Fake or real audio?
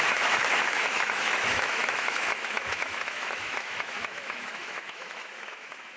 fake